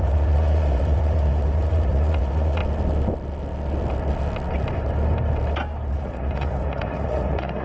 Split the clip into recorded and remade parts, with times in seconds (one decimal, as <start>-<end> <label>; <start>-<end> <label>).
0.0-2.6 remade; 2.6-5.9 recorded; 5.9-7.6 remade